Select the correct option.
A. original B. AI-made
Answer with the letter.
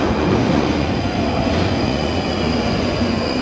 B